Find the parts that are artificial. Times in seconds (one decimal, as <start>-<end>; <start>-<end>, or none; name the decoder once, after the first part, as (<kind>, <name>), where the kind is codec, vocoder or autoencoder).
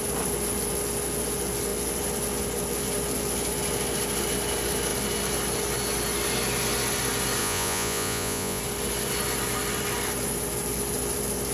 7.4-8.6 (vocoder, Vocos)